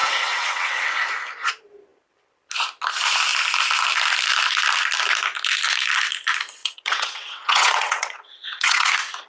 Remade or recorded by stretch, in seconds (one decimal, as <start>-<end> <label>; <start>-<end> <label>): 0.0-0.8 remade; 0.8-6.6 recorded; 6.6-8.9 remade; 8.9-9.3 recorded